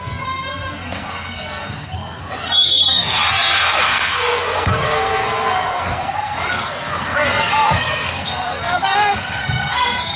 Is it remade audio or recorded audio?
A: remade